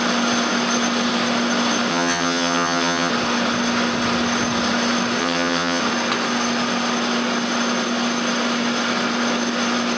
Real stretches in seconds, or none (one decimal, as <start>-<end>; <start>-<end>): 0.0-1.9; 3.1-5.2; 5.8-10.0